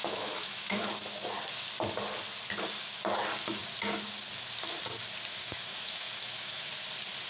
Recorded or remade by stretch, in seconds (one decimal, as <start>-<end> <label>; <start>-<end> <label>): 0.0-0.8 remade; 0.8-5.3 recorded; 5.3-6.7 remade; 6.7-7.3 recorded